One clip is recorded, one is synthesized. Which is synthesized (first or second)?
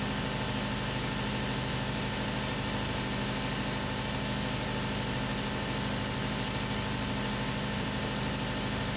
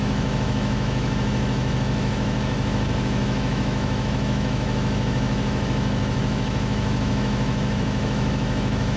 second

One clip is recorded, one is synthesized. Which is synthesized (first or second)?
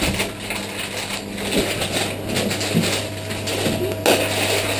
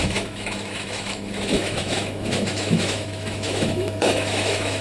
second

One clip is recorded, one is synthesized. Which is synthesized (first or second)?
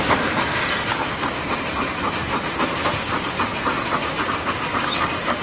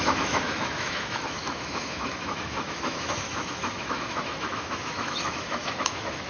second